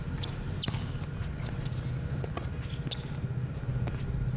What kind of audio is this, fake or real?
real